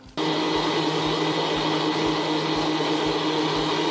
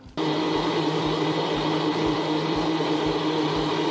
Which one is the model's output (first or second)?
second